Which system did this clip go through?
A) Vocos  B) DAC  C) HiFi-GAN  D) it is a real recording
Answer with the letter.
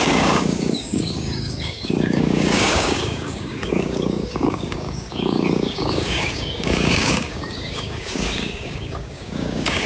B